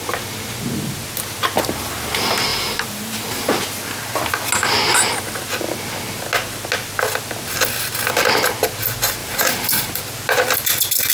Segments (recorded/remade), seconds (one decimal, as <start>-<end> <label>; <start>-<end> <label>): 0.0-2.5 recorded; 2.5-3.5 remade; 3.5-9.2 recorded; 9.2-10.0 remade; 10.0-11.1 recorded